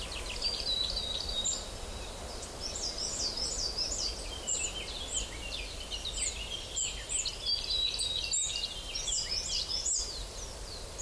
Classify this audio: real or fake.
real